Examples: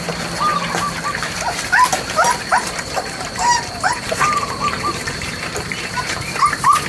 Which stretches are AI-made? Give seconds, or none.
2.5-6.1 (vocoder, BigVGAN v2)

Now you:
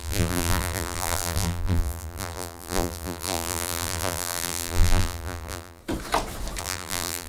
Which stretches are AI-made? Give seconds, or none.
0.0-5.8 (vocoder, BigVGAN v2); 6.6-7.3

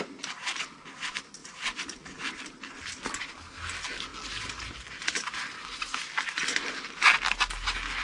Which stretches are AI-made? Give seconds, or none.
1.4-2.5 (vocoder, BigVGAN v2)

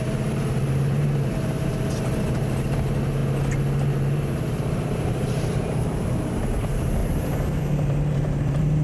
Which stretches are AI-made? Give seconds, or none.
0.0-3.2 (vocoder, BigVGAN v2); 3.9-7.0; 7.6-8.8

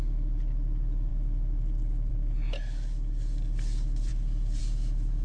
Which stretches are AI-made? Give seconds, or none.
none

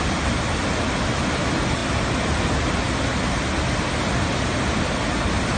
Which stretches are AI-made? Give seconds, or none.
none

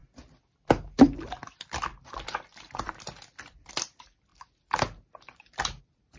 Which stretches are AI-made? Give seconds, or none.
0.8-4.3 (vocoder, BigVGAN v2); 5.8-6.2